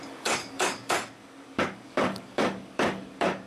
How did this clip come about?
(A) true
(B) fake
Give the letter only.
B